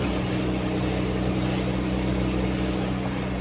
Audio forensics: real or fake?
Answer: real